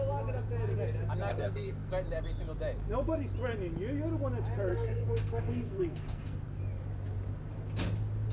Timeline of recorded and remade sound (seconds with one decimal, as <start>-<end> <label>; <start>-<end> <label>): 0.0-1.3 recorded; 1.3-1.9 remade; 1.9-4.7 recorded; 4.7-6.6 remade; 6.6-8.3 recorded